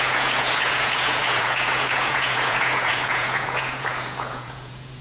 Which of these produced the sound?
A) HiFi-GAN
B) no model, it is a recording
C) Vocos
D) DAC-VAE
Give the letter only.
C